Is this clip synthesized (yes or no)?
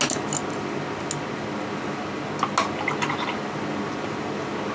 no